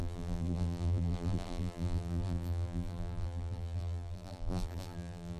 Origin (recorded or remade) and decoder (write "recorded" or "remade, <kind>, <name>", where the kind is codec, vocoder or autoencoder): remade, vocoder, BigVGAN v2